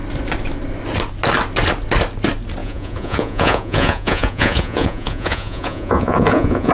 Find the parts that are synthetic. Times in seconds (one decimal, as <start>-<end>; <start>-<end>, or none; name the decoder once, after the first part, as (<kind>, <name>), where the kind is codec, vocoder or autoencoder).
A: 2.6-6.7 (vocoder, Vocos)